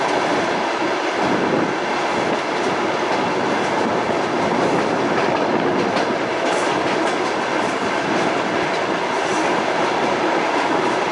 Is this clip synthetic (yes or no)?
no